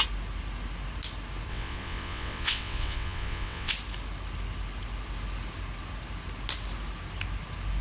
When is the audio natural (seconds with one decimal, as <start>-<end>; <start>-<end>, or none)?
0.0-1.5; 3.7-7.8